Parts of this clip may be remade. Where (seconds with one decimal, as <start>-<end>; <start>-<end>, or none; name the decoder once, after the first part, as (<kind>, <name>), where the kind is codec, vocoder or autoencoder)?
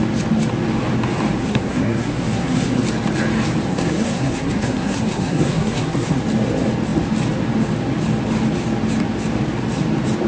1.4-2.8 (codec, SNAC); 3.7-6.2